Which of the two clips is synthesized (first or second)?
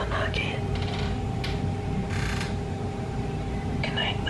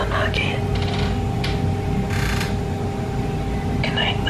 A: first